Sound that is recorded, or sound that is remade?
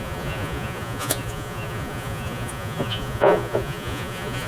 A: remade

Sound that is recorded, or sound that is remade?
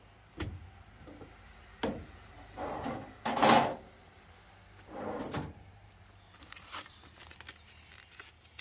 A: recorded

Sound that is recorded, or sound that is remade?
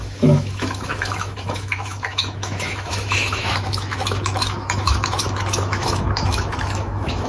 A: remade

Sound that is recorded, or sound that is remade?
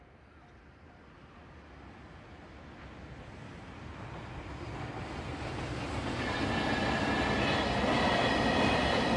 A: recorded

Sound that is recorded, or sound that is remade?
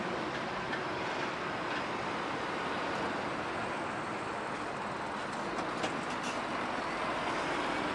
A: recorded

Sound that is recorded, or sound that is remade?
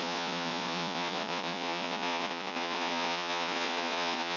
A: remade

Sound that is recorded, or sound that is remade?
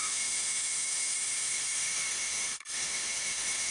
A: remade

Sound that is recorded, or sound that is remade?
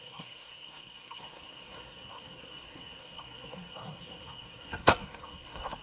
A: remade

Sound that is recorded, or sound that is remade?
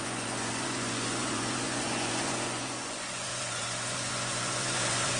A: remade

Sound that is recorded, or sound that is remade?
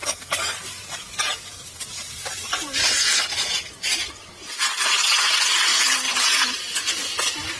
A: recorded